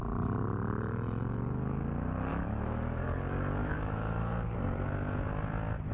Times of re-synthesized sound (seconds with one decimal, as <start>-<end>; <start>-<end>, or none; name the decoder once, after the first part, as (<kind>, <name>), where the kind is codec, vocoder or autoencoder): 2.3-3.0 (autoencoder, DAC-VAE); 3.6-4.2